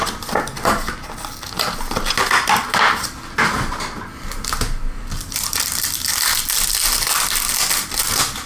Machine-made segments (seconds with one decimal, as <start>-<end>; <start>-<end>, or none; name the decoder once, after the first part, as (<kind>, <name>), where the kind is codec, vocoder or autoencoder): none